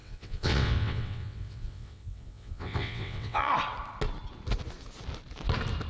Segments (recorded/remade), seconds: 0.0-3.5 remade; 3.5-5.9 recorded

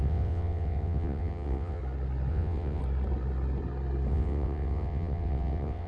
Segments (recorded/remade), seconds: 0.0-1.8 remade; 1.8-2.3 recorded; 2.3-2.8 remade; 2.8-4.1 recorded; 4.1-5.9 remade

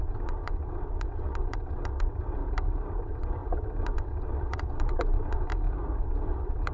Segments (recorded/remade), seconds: 0.0-2.4 remade; 2.4-3.0 recorded; 3.0-5.5 remade; 5.5-6.0 recorded; 6.0-6.7 remade